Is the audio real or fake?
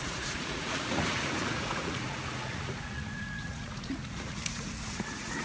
fake